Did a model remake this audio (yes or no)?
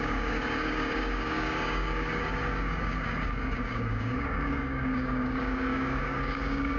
yes